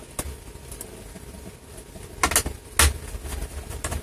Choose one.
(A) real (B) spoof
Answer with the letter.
A